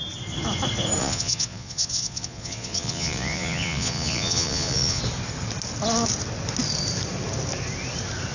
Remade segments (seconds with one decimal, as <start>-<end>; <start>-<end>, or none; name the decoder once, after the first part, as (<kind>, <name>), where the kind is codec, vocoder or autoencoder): 1.0-5.0 (vocoder, Vocos)